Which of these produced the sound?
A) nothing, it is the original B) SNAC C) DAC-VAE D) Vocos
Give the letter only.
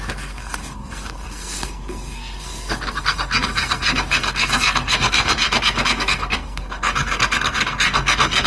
B